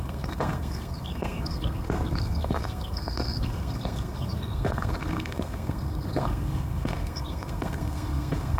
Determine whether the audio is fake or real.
fake